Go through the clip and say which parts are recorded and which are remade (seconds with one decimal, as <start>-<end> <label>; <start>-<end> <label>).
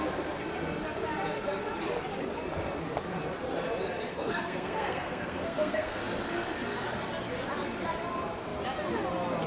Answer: 0.0-4.1 recorded; 4.1-6.0 remade; 6.0-9.5 recorded